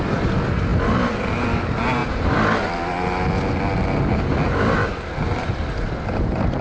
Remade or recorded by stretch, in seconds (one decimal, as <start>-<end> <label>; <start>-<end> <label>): 0.0-6.6 recorded